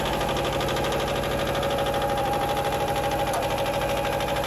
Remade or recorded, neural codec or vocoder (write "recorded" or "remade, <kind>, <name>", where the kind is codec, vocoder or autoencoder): remade, vocoder, BigVGAN v2